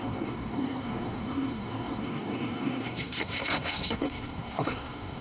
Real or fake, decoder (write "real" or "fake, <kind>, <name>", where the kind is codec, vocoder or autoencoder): fake, codec, SNAC